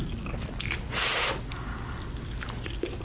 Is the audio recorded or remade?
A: recorded